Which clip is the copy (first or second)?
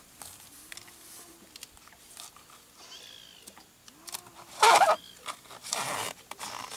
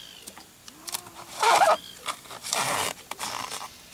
second